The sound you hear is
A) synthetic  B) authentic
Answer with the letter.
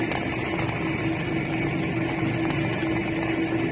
B